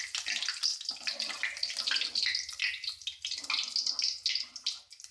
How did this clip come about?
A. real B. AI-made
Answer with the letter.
A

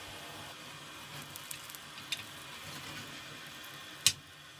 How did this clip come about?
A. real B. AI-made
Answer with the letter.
A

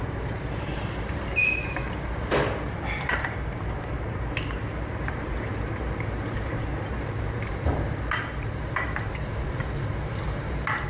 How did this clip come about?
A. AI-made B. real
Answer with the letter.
A